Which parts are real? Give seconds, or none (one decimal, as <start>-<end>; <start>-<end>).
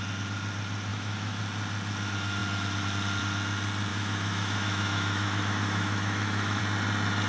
0.0-0.9; 1.4-3.9; 6.6-7.3